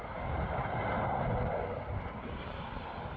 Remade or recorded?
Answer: remade